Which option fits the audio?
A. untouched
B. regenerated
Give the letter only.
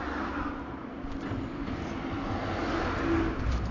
A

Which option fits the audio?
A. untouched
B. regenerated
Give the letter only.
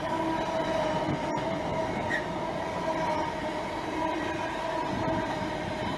A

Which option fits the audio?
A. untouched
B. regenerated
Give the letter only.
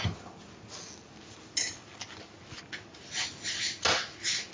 A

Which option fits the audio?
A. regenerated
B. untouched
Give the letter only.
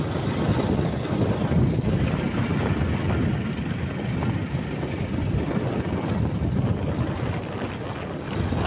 B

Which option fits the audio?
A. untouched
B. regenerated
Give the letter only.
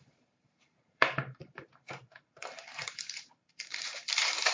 B